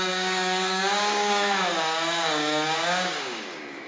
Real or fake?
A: fake